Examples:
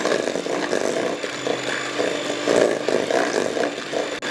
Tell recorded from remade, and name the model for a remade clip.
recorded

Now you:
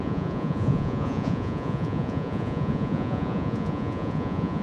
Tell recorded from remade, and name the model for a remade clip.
remade, vocoder, Vocos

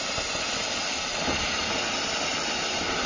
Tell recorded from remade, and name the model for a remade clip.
recorded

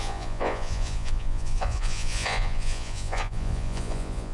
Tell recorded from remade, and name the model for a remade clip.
remade, vocoder, Vocos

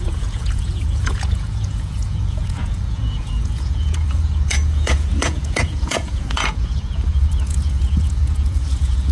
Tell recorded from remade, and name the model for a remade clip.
remade, vocoder, Vocos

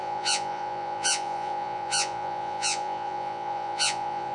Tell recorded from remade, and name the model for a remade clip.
remade, vocoder, Vocos